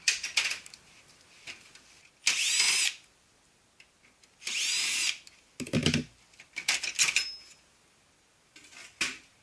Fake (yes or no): no